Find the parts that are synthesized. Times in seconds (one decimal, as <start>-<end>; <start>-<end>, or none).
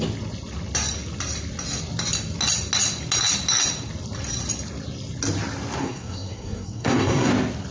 5.8-7.3